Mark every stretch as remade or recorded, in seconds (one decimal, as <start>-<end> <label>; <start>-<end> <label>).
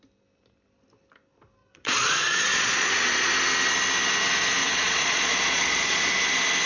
0.0-1.6 recorded; 1.6-3.3 remade; 3.3-4.6 recorded; 4.6-6.1 remade; 6.1-6.7 recorded